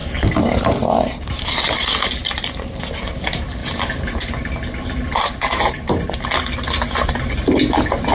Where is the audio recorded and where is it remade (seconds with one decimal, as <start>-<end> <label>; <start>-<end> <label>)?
0.0-1.0 remade; 1.0-3.6 recorded; 3.6-6.2 remade; 6.2-8.1 recorded